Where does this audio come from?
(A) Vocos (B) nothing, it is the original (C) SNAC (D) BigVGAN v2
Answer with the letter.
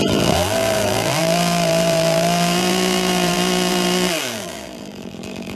D